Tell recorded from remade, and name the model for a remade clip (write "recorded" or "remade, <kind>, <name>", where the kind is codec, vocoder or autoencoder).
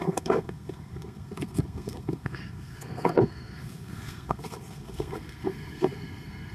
remade, codec, SNAC